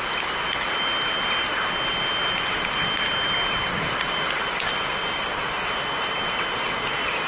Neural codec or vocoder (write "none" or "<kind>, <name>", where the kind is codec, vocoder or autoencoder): none